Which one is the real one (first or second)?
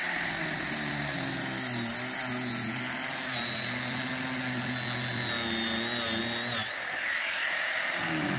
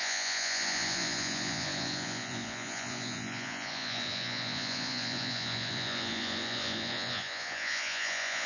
first